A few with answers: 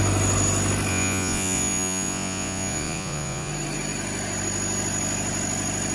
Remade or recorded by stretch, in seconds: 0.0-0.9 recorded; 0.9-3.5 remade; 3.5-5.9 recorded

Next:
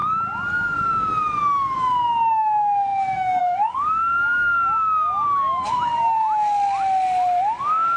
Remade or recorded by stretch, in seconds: 0.0-2.3 recorded; 2.3-5.9 remade; 5.9-7.6 recorded; 7.6-8.0 remade

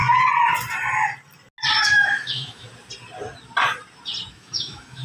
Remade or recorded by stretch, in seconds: 0.0-1.8 recorded; 1.8-2.7 remade; 2.7-4.3 recorded; 4.3-5.0 remade

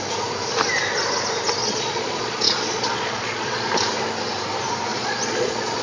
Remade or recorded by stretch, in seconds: 0.0-1.6 recorded; 1.6-3.7 remade; 3.7-4.9 recorded; 4.9-5.8 remade

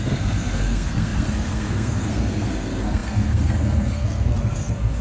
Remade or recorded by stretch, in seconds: 0.0-5.0 remade

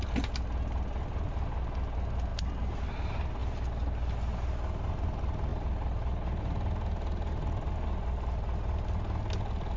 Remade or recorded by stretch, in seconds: 0.0-9.8 recorded